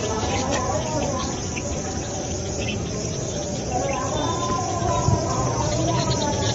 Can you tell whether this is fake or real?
real